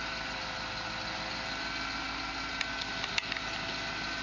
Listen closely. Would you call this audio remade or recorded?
recorded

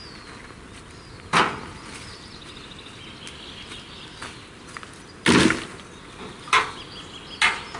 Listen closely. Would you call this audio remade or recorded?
recorded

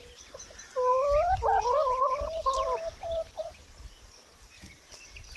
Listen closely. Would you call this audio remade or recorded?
recorded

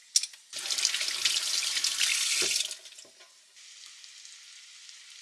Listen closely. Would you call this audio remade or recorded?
recorded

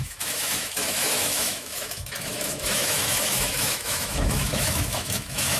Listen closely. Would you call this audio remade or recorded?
remade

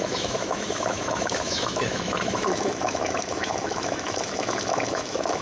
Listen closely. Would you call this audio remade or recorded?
remade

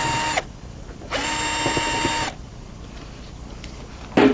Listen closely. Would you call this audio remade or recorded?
recorded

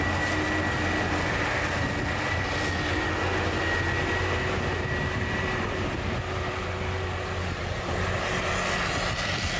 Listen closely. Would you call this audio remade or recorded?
recorded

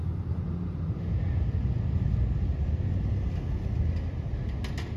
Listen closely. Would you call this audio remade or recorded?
recorded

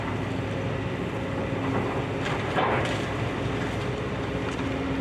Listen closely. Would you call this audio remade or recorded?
recorded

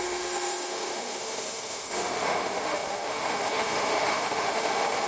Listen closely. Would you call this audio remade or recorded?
remade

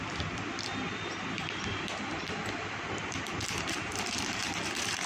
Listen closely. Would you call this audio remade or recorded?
remade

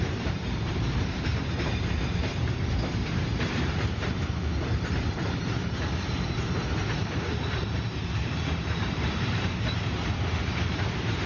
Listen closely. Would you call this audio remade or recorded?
remade